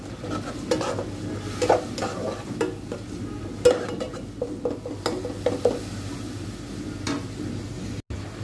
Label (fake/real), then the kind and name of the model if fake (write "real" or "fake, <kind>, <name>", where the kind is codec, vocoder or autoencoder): real